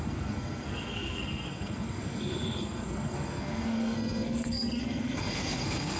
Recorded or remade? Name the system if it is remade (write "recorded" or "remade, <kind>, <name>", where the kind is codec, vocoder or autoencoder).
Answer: remade, codec, SNAC